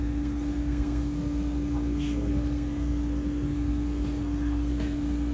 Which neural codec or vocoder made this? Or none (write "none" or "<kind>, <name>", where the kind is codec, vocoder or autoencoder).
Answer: codec, SNAC